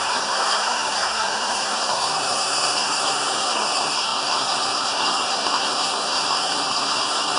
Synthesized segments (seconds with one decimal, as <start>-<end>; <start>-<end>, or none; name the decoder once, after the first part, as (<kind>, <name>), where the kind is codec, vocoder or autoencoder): 0.0-7.4 (codec, SNAC)